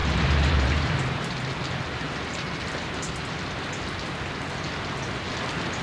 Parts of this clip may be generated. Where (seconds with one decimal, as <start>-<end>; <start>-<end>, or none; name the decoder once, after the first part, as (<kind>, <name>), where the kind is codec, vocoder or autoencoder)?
0.0-1.3 (vocoder, BigVGAN v2)